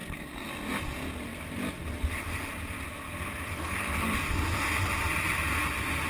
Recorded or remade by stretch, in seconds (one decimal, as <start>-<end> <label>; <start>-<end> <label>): 0.0-0.5 remade; 0.5-3.6 recorded; 3.6-4.1 remade; 4.1-6.1 recorded